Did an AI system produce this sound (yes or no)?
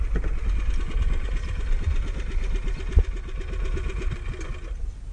no